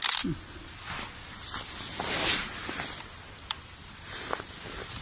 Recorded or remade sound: recorded